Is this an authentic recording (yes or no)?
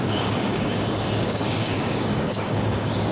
no